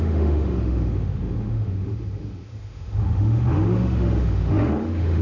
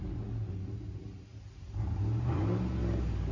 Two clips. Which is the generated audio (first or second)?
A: first